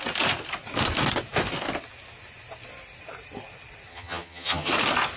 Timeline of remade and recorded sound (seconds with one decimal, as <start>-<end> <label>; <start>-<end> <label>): 0.0-3.9 recorded; 3.9-4.7 remade; 4.7-5.2 recorded